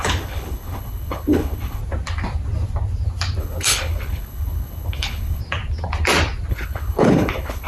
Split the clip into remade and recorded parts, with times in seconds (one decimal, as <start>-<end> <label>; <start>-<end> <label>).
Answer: 0.0-1.8 remade; 1.8-3.4 recorded; 3.4-5.4 remade; 5.4-6.5 recorded; 6.5-7.7 remade